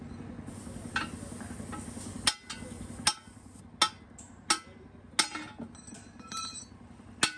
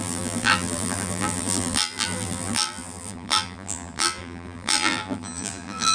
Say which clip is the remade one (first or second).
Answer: second